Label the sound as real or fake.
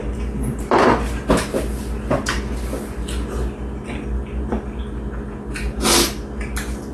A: real